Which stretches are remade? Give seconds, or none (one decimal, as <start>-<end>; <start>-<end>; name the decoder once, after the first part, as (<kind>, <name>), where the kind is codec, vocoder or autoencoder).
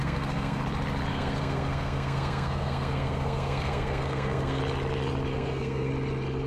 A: 0.0-0.6 (codec, SNAC); 1.1-4.6; 5.3-5.9